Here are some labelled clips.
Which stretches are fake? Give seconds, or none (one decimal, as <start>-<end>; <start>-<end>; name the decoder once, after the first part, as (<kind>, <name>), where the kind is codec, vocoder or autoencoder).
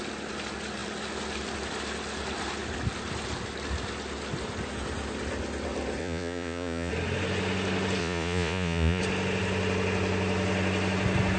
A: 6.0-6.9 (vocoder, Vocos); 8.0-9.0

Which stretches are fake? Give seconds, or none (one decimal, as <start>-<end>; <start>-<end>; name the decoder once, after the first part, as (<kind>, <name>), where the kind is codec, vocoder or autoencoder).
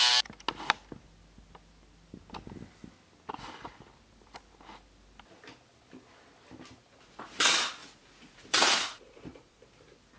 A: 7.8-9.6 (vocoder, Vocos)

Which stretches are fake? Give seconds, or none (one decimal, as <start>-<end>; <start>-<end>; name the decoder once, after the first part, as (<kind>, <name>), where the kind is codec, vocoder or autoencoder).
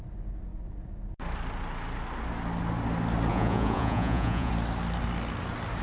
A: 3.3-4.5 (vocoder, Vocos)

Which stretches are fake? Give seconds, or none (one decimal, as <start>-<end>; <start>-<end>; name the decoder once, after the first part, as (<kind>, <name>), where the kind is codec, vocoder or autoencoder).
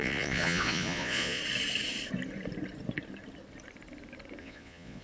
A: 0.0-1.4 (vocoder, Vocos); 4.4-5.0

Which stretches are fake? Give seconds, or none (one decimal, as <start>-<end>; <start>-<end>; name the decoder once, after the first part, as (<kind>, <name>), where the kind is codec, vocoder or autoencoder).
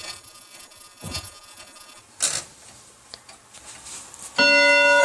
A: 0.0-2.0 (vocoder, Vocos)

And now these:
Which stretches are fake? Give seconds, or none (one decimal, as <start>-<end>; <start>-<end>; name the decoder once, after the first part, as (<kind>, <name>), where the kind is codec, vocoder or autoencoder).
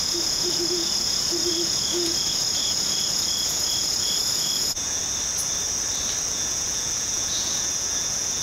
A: 0.0-5.0 (vocoder, Vocos); 6.3-8.4